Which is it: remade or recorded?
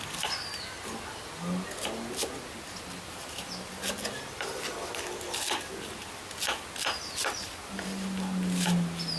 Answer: recorded